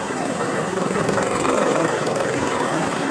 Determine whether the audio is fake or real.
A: fake